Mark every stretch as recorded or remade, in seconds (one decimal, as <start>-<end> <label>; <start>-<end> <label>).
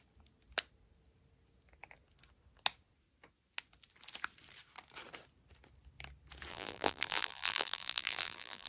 0.0-6.5 recorded; 6.5-8.7 remade